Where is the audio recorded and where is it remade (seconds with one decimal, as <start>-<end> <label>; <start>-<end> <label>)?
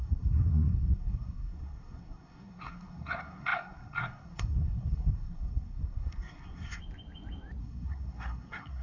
0.0-6.8 remade; 6.8-7.6 recorded; 7.6-8.8 remade